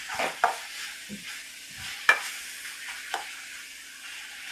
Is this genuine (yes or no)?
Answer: yes